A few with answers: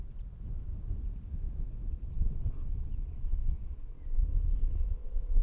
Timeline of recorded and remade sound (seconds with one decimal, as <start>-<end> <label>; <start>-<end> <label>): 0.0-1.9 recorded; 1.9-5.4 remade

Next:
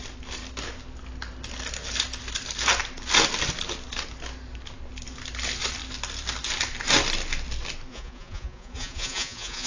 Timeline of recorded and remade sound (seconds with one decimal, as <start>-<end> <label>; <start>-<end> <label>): 0.0-7.9 recorded; 7.9-9.7 remade

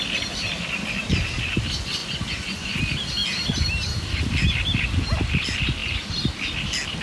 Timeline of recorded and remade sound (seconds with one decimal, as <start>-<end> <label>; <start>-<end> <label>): 0.0-2.0 recorded; 2.0-2.8 remade; 2.8-7.0 recorded

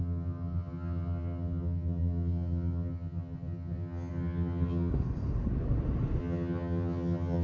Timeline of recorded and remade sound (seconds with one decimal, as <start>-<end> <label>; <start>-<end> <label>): 0.0-4.9 remade; 4.9-6.2 recorded; 6.2-7.4 remade

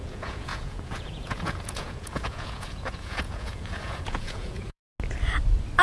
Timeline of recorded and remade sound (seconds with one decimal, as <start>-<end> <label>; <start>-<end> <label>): 0.0-4.8 remade; 4.8-5.8 recorded